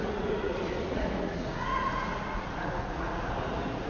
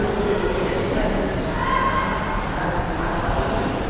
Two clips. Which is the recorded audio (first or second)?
second